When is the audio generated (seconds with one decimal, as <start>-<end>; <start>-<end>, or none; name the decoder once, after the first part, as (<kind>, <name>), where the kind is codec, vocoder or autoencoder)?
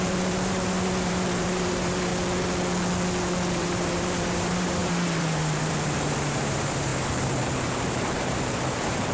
0.0-2.1 (vocoder, BigVGAN v2); 3.5-9.1